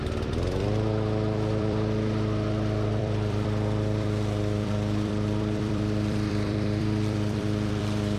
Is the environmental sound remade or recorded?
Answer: remade